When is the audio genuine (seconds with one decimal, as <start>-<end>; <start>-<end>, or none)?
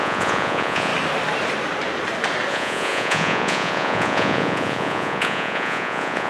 0.9-2.5